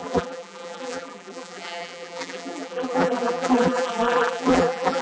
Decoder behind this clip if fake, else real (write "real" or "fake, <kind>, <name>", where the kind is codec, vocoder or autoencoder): fake, vocoder, BigVGAN v2